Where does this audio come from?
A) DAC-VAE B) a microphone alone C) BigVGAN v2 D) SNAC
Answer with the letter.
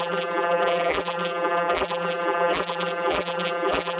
C